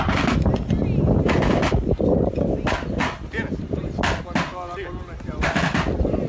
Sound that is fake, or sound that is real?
real